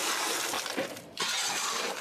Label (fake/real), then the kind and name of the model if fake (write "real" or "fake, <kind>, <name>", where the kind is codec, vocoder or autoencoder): real